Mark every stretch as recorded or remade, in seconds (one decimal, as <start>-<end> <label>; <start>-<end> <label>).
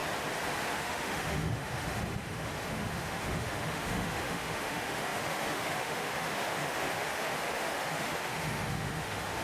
0.0-0.6 recorded; 0.6-9.4 remade